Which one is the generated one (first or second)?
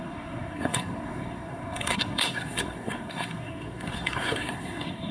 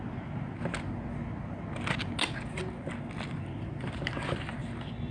first